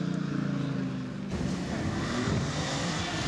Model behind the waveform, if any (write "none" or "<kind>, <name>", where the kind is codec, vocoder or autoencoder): none